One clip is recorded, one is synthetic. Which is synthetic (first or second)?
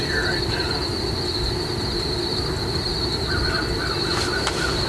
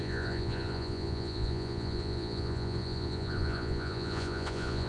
second